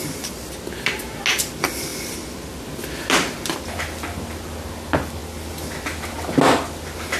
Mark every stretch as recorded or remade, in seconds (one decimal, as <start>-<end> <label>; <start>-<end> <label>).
0.0-1.0 remade; 1.0-1.9 recorded; 1.9-2.6 remade; 2.6-7.2 recorded